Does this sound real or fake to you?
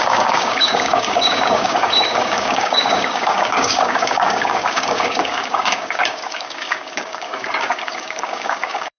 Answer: fake